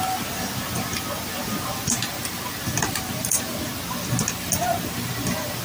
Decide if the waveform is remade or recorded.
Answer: remade